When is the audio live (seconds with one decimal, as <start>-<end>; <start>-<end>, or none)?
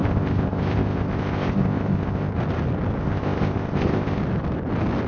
2.3-3.0; 4.2-5.1